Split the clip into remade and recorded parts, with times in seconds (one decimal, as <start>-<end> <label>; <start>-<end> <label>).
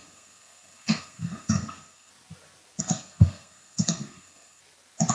0.0-2.1 remade; 2.1-2.8 recorded; 2.8-4.6 remade; 4.6-5.1 recorded